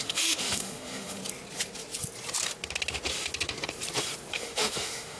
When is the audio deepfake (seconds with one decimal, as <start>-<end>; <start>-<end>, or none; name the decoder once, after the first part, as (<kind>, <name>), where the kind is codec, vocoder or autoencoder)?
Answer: 0.0-1.2 (autoencoder, DAC-VAE); 4.3-5.2